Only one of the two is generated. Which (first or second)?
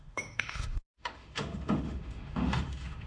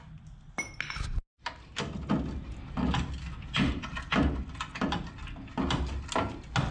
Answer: first